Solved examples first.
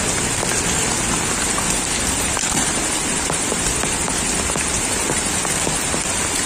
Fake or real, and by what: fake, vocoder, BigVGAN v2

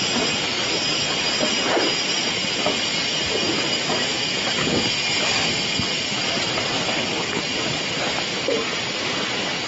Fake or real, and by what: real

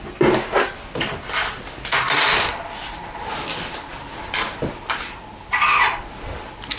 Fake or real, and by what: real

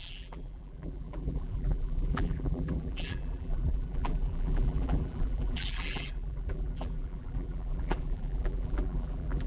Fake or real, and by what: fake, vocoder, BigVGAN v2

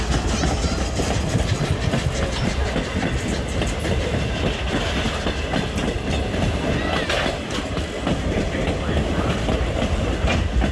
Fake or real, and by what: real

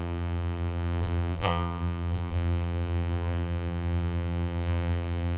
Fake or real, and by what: fake, vocoder, BigVGAN v2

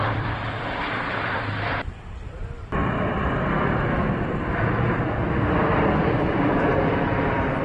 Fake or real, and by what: fake, vocoder, BigVGAN v2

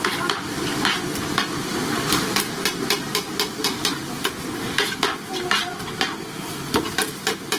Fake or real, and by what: real